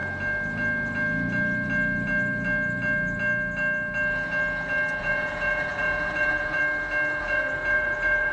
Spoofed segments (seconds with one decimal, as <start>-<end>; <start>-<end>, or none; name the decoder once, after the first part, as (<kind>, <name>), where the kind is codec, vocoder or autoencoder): 5.0-6.6 (vocoder, Vocos); 7.2-8.3